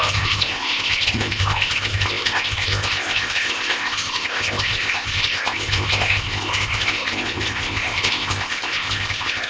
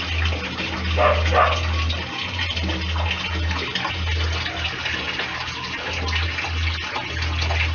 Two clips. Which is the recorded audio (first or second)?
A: second